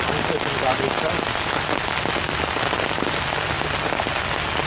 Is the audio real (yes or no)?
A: yes